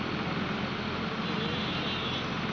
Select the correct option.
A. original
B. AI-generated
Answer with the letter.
A